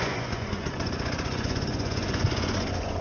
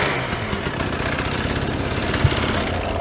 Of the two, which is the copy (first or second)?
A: first